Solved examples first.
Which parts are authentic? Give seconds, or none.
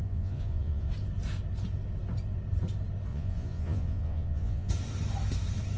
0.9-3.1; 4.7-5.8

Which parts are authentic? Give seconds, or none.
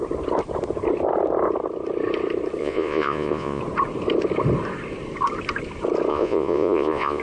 0.0-2.6; 3.6-6.1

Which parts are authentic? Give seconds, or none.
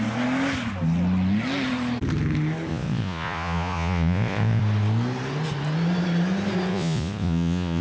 0.0-2.7; 4.6-6.7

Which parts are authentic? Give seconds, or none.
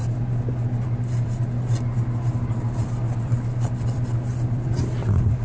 0.0-5.4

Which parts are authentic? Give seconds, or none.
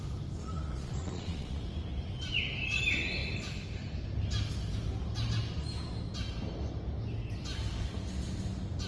0.0-0.4; 1.6-8.9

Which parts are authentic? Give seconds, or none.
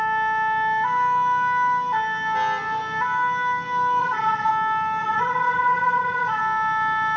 0.0-4.0; 4.5-5.0; 6.4-7.2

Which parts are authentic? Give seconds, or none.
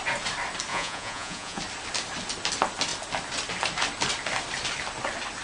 0.0-0.7; 1.6-5.4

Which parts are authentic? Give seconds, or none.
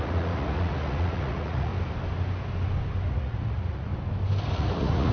1.7-3.1; 3.9-4.5